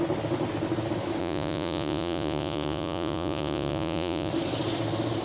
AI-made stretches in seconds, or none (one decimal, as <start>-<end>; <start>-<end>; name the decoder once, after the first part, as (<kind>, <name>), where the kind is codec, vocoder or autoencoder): 1.2-4.3 (vocoder, Vocos)